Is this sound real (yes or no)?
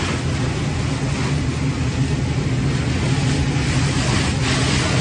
yes